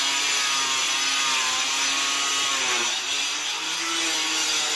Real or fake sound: real